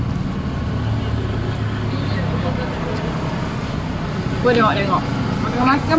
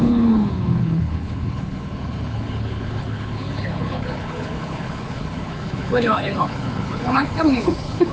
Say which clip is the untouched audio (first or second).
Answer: first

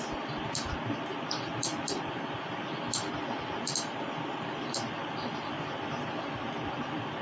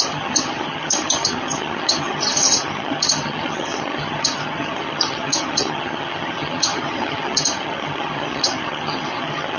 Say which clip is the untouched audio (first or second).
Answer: first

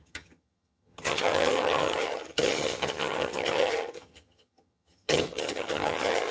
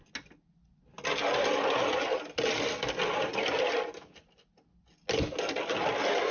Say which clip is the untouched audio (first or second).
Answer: second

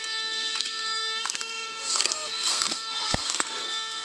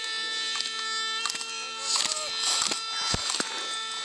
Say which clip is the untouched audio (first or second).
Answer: second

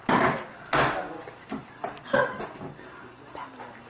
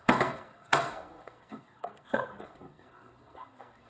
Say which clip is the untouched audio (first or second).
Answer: first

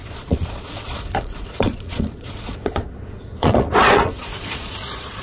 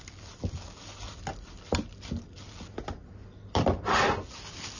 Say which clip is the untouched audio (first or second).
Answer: second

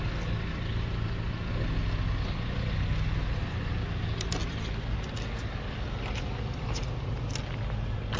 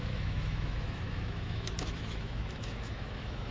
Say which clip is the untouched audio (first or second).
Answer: first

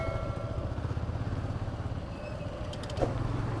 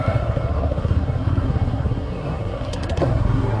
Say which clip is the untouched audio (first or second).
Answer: first